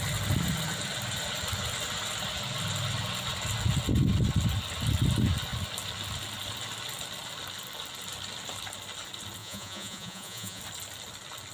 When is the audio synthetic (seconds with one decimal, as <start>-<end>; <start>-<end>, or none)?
9.4-10.6